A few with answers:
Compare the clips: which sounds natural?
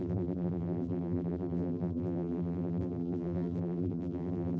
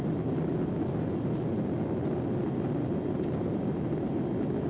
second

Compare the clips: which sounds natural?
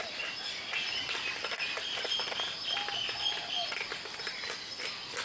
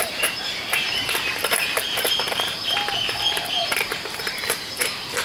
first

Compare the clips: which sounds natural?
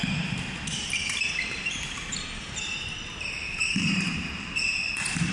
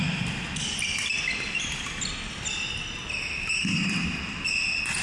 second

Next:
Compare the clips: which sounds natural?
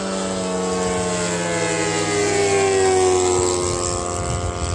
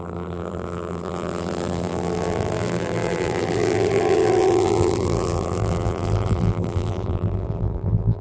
first